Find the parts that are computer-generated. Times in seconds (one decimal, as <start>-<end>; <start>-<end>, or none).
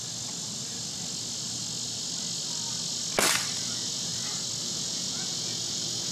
3.6-4.1; 4.6-6.1